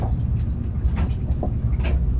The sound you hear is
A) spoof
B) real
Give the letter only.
B